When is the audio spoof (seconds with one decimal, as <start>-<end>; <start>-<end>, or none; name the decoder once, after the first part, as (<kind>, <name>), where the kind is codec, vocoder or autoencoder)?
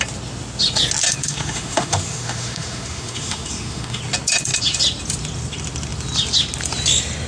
1.2-4.0 (autoencoder, DAC-VAE)